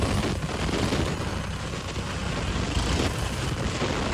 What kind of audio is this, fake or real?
real